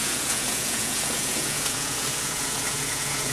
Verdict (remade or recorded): remade